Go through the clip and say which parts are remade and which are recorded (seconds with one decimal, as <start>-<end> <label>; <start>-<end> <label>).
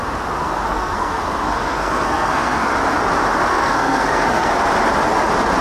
0.0-0.4 recorded; 0.4-2.7 remade; 2.7-3.5 recorded; 3.5-4.5 remade; 4.5-5.6 recorded